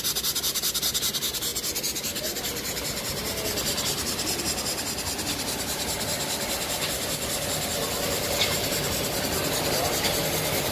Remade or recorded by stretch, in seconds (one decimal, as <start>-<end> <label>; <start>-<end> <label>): 0.0-10.7 recorded